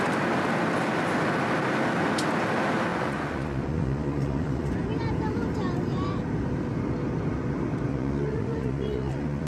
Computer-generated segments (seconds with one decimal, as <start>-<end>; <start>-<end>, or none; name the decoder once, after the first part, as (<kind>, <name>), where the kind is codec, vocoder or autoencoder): 2.9-4.7 (vocoder, Vocos); 7.9-9.5

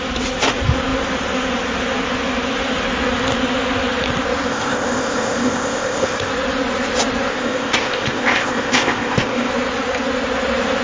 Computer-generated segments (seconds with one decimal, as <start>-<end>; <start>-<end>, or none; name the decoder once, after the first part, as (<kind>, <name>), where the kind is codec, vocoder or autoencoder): 4.5-6.3 (codec, ZipCodec); 7.3-9.5